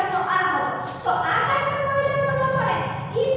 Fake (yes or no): no